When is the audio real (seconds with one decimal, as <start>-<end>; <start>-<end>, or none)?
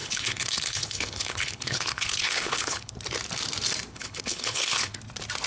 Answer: 2.9-3.9; 5.0-5.5